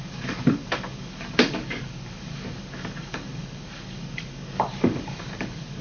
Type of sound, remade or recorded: remade